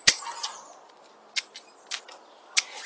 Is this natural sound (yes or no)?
yes